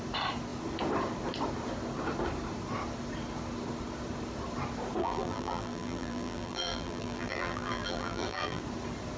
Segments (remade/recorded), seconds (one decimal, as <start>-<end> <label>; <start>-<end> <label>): 0.0-5.0 recorded; 5.0-8.6 remade; 8.6-9.2 recorded